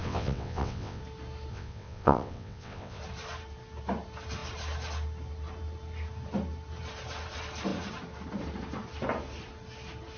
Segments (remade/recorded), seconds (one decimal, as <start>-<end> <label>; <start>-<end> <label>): 0.0-1.0 remade; 1.0-1.5 recorded; 1.5-3.0 remade; 3.0-10.2 recorded